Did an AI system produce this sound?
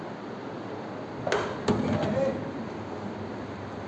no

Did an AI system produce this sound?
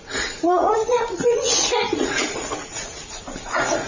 yes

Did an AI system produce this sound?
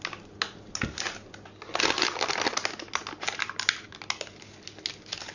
no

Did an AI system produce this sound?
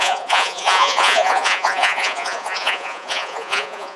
yes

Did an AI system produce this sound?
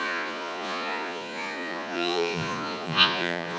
yes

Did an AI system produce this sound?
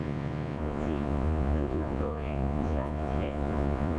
yes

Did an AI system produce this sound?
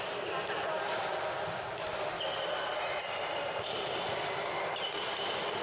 no